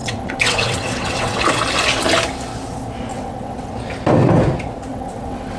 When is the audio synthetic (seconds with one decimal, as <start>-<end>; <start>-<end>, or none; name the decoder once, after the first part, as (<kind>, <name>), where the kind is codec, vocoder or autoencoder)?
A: 0.0-1.4 (vocoder, WaveNeXt); 3.1-3.7; 4.9-5.6